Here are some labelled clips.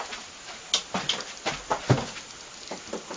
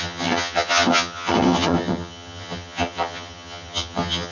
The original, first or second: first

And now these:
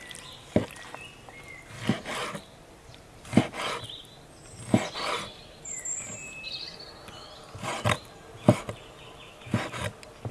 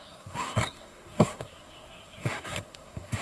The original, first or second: first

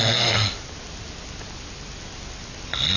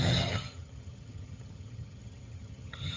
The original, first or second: first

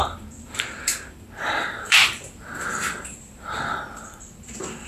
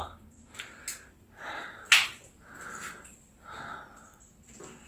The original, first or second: second